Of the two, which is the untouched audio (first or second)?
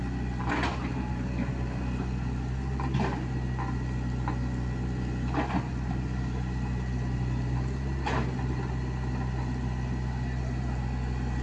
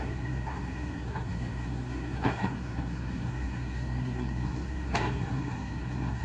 first